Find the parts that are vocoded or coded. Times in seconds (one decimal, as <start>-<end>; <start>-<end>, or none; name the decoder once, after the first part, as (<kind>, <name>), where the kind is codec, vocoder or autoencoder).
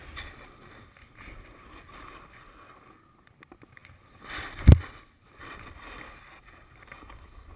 none